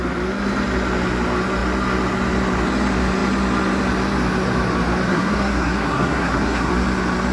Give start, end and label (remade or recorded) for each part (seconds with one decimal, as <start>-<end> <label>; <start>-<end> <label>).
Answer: 0.0-5.1 recorded; 5.1-6.7 remade; 6.7-7.3 recorded